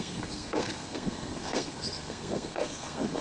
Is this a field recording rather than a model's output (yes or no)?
no